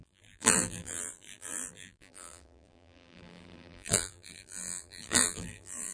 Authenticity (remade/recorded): remade